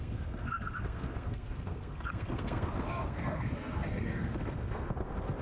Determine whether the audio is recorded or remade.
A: remade